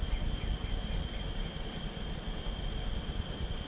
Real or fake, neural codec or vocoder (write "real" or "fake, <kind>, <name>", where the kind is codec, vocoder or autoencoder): real